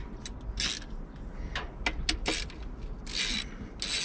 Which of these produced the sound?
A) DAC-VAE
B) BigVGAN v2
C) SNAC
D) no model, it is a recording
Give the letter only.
D